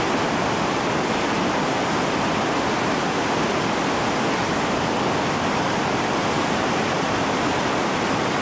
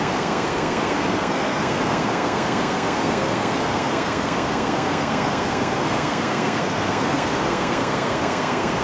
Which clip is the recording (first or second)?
first